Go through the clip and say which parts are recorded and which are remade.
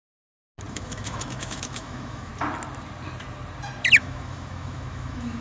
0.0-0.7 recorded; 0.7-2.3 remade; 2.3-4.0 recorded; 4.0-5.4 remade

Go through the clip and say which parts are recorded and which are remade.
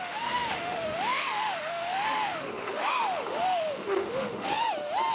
0.0-4.5 remade; 4.5-5.1 recorded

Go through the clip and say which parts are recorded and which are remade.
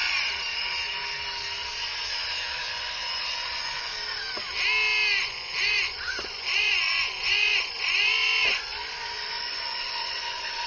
0.0-2.7 recorded; 2.7-3.9 remade; 3.9-5.2 recorded; 5.2-10.7 remade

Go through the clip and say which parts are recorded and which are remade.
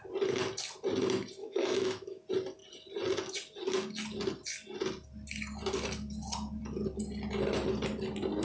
0.0-1.4 recorded; 1.4-2.2 remade; 2.2-8.4 recorded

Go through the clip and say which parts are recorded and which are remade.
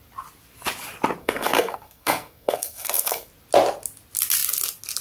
0.0-1.2 recorded; 1.2-3.3 remade; 3.3-5.0 recorded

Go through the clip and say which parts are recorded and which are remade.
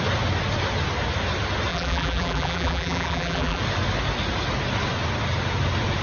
0.0-1.7 recorded; 1.7-3.6 remade; 3.6-6.0 recorded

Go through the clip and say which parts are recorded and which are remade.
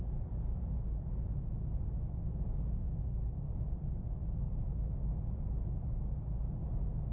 0.0-7.1 recorded